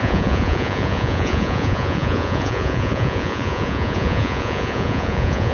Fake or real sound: fake